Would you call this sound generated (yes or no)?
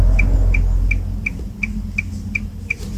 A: no